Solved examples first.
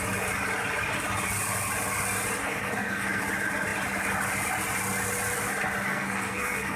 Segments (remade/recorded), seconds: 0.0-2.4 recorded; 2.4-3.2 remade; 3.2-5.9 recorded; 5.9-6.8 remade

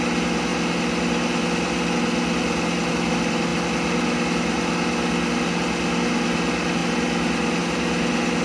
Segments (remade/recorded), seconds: 0.0-8.4 recorded

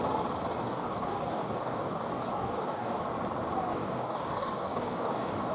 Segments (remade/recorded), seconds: 0.0-0.6 recorded; 0.6-3.0 remade; 3.0-3.7 recorded; 3.7-5.5 remade

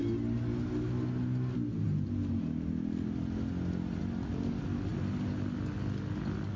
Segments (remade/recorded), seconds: 0.0-6.6 recorded

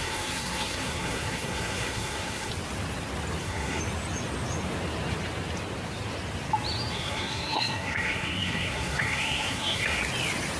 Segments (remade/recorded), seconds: 0.0-2.5 remade; 2.5-3.4 recorded; 3.4-3.8 remade; 3.8-6.9 recorded; 6.9-10.0 remade; 10.0-10.6 recorded

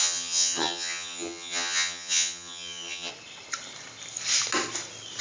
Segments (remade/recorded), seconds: 0.0-3.1 remade; 3.1-5.2 recorded